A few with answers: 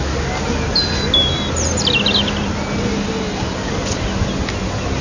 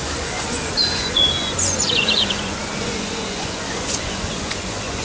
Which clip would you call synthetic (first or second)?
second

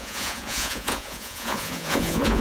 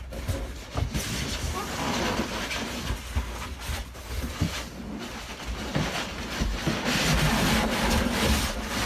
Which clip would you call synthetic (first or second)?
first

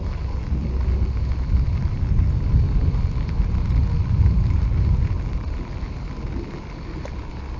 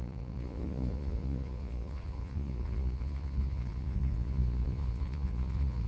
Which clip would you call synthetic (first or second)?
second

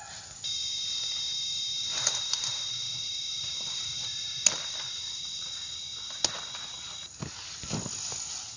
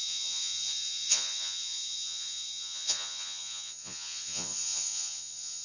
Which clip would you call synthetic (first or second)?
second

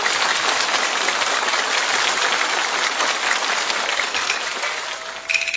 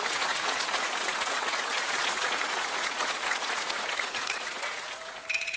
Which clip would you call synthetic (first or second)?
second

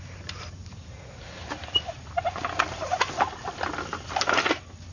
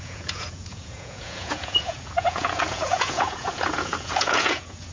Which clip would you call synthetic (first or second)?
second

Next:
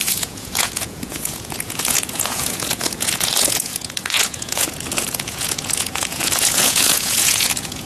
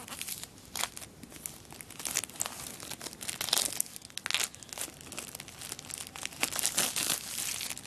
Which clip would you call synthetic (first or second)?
first